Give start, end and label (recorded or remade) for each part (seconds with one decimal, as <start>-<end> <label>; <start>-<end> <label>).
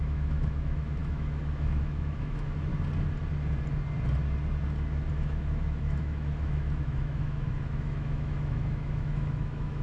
0.0-2.7 remade; 2.7-5.1 recorded; 5.1-9.8 remade